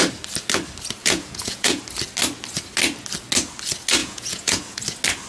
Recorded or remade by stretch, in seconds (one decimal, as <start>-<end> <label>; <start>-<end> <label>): 0.0-1.0 recorded; 1.0-1.8 remade; 1.8-4.0 recorded; 4.0-4.8 remade; 4.8-5.3 recorded